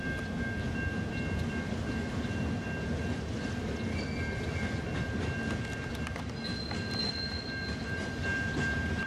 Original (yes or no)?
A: yes